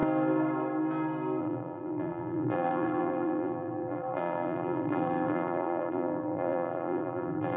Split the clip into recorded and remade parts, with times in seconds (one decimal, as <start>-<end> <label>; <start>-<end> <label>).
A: 0.0-1.4 recorded; 1.4-7.6 remade

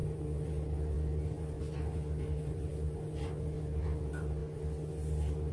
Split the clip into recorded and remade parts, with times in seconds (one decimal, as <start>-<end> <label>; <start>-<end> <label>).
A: 0.0-5.5 recorded

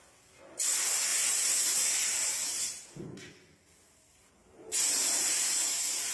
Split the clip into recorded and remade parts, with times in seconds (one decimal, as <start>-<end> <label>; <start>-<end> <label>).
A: 0.0-1.1 recorded; 1.1-2.8 remade; 2.8-4.4 recorded; 4.4-6.1 remade

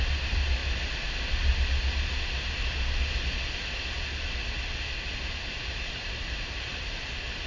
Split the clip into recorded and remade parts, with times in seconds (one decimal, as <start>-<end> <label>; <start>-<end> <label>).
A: 0.0-0.6 remade; 0.6-5.1 recorded; 5.1-7.5 remade

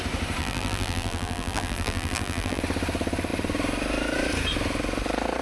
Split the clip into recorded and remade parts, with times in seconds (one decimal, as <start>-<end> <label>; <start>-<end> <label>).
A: 0.0-0.4 recorded; 0.4-2.6 remade; 2.6-5.4 recorded

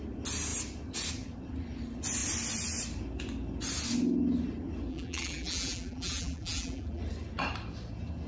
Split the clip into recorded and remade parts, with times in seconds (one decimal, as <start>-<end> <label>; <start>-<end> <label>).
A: 0.0-4.9 recorded; 4.9-7.0 remade; 7.0-8.3 recorded

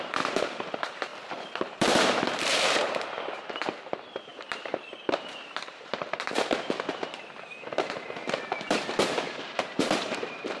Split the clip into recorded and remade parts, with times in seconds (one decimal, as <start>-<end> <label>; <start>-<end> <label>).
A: 0.0-10.6 remade